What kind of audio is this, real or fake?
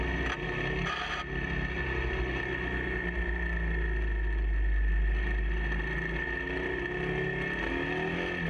real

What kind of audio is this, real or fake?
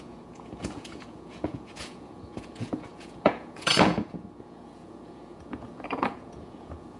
fake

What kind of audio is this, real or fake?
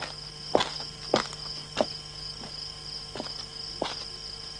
real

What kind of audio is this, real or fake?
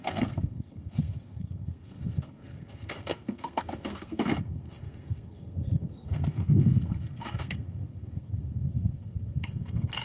fake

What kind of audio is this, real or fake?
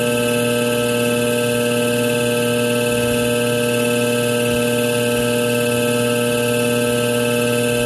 real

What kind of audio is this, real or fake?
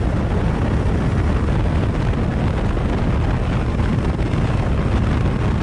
real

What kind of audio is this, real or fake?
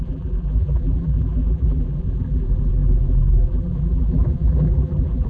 fake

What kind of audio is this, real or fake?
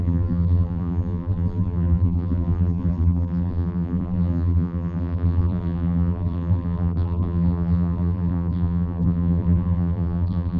fake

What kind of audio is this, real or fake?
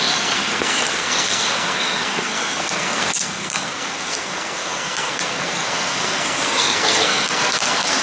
fake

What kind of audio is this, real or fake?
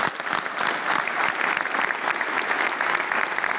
real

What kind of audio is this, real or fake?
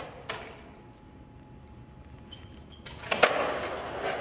real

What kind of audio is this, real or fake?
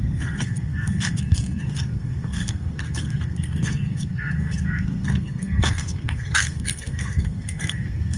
fake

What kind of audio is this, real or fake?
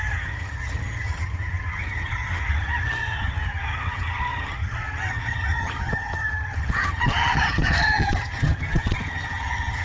fake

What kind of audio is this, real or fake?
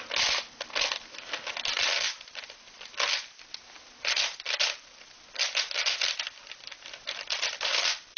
real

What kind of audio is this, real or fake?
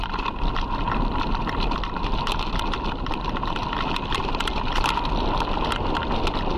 real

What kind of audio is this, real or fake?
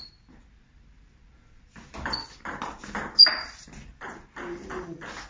real